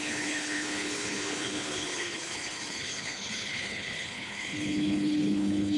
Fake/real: fake